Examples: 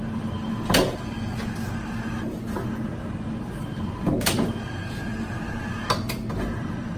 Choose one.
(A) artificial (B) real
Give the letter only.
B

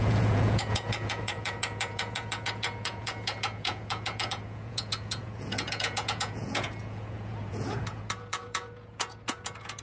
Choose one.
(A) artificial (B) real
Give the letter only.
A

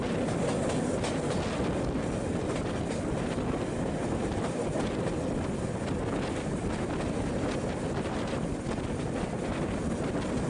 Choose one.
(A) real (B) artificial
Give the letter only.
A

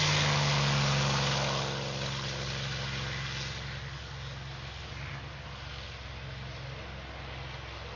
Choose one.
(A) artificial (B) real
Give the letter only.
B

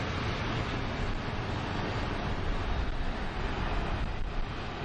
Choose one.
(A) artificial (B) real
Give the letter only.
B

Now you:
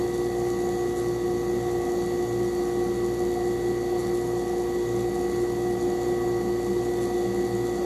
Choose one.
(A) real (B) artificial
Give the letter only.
A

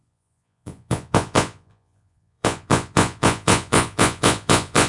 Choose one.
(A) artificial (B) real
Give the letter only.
A